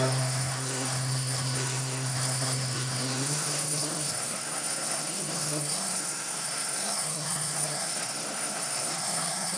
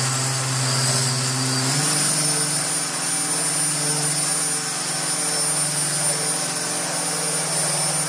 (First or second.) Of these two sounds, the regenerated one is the first